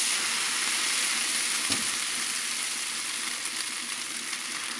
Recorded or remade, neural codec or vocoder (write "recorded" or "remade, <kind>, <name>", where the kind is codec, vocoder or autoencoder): recorded